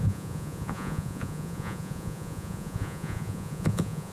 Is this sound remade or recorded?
remade